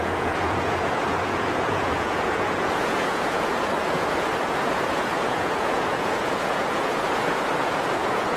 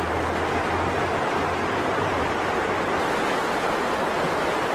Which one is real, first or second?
second